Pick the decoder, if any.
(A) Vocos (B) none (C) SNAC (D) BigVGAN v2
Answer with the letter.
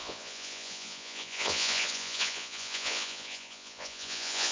A